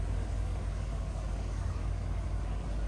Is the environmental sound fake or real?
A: fake